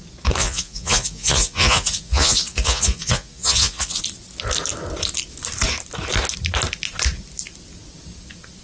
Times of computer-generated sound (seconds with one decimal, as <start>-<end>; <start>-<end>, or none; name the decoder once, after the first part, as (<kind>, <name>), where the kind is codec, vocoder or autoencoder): 0.4-4.0 (vocoder, Vocos)